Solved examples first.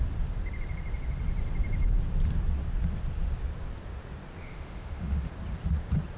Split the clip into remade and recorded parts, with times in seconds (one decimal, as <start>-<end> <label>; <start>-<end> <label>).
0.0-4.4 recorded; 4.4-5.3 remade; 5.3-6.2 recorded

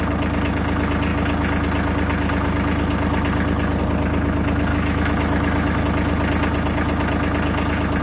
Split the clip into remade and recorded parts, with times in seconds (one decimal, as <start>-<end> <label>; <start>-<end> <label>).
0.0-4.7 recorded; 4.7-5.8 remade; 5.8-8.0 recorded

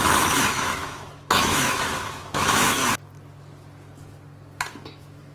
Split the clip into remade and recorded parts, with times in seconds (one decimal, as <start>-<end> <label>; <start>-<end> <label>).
0.0-2.8 remade; 2.8-4.7 recorded; 4.7-5.3 remade

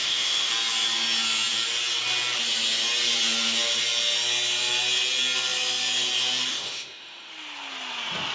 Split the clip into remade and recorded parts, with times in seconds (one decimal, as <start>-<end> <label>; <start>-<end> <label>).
0.0-0.5 remade; 0.5-6.5 recorded; 6.5-7.3 remade; 7.3-8.3 recorded